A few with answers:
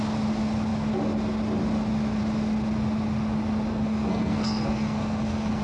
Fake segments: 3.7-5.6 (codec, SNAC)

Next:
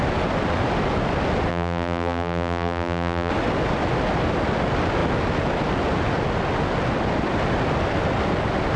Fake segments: 1.5-3.3 (vocoder, BigVGAN v2)

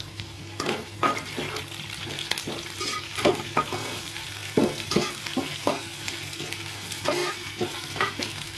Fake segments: 0.0-1.1 (codec, SNAC); 2.0-2.4; 3.0-8.6